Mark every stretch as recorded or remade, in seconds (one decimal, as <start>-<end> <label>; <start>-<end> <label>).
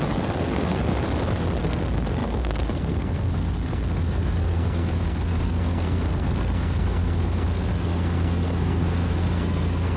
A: 0.0-0.9 remade; 0.9-1.6 recorded; 1.6-10.0 remade